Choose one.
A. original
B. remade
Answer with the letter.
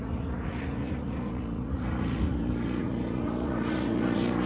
B